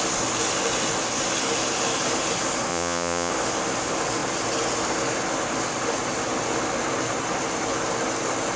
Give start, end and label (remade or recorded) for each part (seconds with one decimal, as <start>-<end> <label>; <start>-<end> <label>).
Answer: 0.0-2.7 recorded; 2.7-3.3 remade; 3.3-8.6 recorded